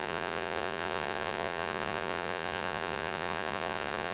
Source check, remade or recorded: remade